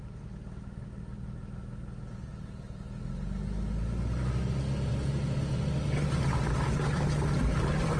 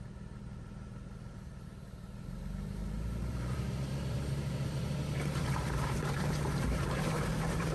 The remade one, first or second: second